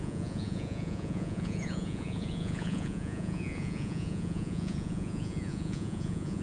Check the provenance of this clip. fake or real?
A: fake